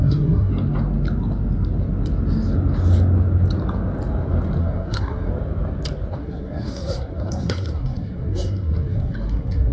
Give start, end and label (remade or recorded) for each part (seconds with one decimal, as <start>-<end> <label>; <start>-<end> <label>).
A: 0.0-0.5 remade; 0.5-4.6 recorded; 4.6-5.3 remade; 5.3-6.2 recorded; 6.2-9.7 remade